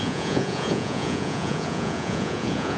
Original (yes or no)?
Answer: no